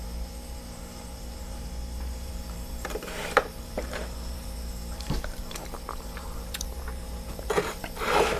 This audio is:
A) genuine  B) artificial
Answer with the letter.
B